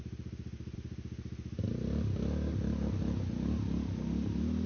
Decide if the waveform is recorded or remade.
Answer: recorded